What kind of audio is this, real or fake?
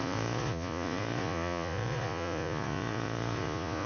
fake